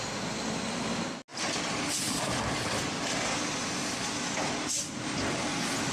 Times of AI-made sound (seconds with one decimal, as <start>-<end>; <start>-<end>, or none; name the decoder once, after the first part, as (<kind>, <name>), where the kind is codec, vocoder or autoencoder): none